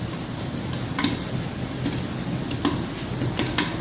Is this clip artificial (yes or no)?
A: no